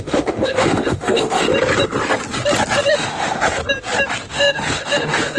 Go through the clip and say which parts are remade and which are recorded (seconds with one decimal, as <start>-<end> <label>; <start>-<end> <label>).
0.0-1.5 remade; 1.5-2.9 recorded; 2.9-3.6 remade; 3.6-4.3 recorded; 4.3-5.4 remade